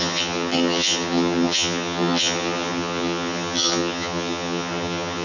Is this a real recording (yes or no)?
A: no